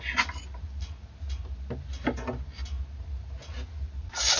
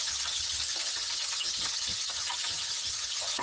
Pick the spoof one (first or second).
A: second